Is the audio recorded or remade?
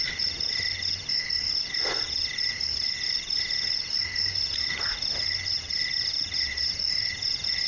recorded